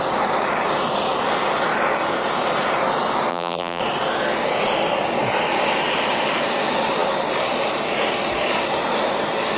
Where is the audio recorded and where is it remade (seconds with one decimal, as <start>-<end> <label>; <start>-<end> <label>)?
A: 0.0-3.3 recorded; 3.3-3.8 remade; 3.8-9.6 recorded